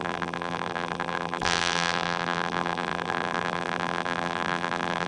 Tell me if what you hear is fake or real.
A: fake